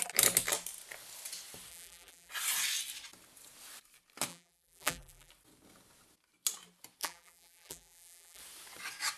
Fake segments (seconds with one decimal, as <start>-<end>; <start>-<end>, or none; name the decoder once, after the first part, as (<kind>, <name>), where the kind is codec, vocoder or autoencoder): 1.7-2.3 (vocoder, BigVGAN v2); 4.3-5.3; 7.0-8.4